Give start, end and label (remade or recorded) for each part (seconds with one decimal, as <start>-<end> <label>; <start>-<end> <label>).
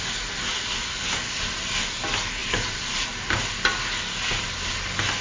0.0-2.4 recorded; 2.4-3.4 remade; 3.4-5.2 recorded